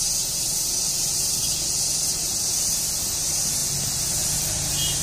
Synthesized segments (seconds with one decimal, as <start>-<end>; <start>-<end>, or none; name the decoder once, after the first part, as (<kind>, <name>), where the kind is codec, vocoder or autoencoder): 0.0-1.4 (vocoder, BigVGAN v2); 2.0-3.6; 4.5-5.0